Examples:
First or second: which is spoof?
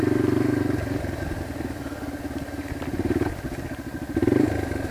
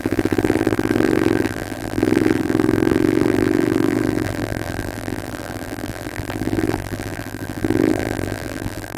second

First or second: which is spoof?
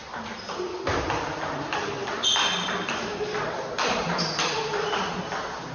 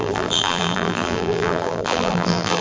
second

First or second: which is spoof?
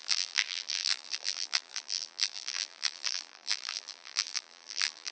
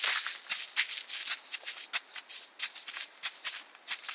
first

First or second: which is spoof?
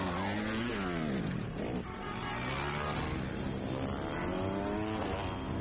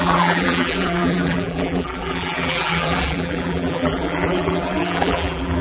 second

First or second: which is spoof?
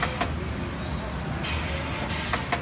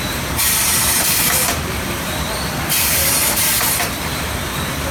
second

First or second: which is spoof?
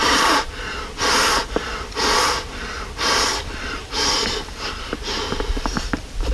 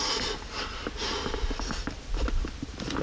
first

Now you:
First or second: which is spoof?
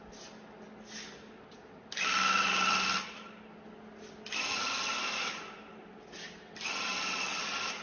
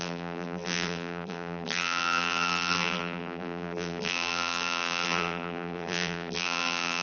second